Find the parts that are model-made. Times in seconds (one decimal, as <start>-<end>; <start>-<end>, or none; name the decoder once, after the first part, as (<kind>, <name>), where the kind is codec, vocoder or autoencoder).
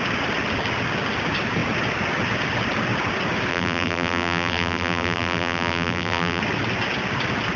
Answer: 3.5-6.4 (vocoder, BigVGAN v2)